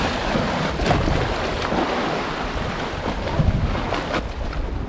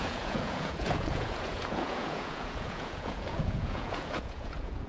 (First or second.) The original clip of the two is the first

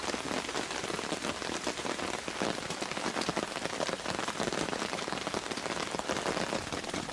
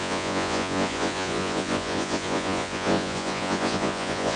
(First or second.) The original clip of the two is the first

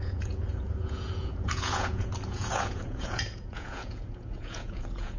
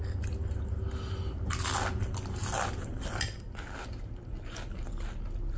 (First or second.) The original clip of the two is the second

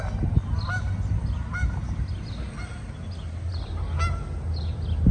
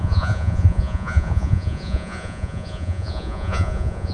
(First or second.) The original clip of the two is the first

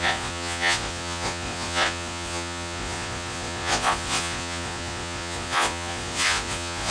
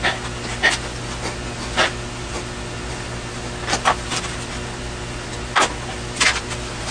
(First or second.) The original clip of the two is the second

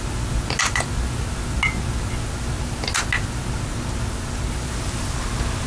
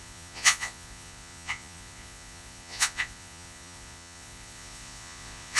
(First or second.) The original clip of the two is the first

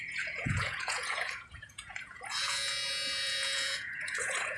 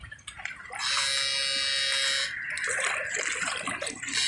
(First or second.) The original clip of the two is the second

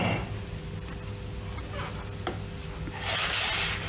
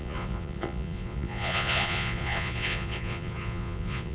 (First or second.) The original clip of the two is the first